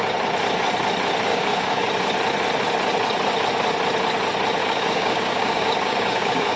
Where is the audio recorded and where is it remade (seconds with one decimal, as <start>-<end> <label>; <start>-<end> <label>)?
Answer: 0.0-1.3 recorded; 1.3-1.9 remade; 1.9-4.6 recorded; 4.6-6.6 remade